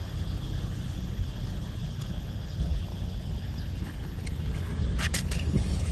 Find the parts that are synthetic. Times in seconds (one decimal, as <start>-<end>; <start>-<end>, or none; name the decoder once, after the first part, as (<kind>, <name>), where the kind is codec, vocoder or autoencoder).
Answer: 0.0-4.7 (codec, HILCodec); 5.2-5.9